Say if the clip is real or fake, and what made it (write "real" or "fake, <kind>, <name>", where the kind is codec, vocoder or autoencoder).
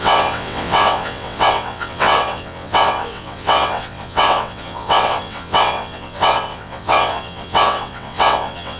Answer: fake, vocoder, WaveNeXt